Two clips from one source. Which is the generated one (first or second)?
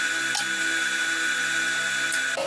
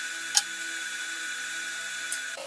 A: second